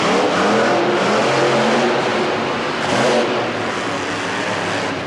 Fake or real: real